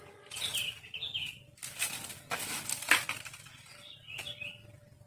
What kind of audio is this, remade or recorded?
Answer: recorded